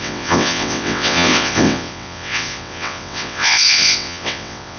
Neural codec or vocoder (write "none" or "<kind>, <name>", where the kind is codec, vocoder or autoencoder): vocoder, WaveNeXt